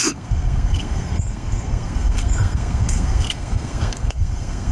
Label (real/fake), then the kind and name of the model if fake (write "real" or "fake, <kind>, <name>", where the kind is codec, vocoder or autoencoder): fake, codec, SNAC